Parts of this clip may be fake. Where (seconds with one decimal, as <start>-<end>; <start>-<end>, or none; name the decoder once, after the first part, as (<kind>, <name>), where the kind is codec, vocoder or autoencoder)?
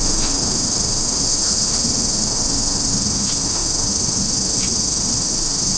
0.0-5.8 (autoencoder, DAC-VAE)